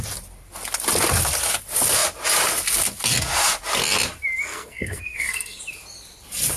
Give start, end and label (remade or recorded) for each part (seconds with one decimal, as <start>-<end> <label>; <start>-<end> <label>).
0.0-4.5 recorded; 4.5-5.6 remade; 5.6-6.6 recorded